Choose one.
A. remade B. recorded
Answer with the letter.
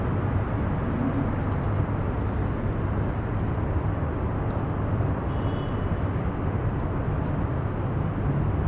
B